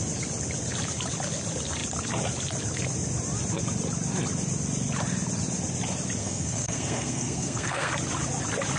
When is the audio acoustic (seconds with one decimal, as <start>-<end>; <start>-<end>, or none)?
0.0-6.2; 7.9-8.8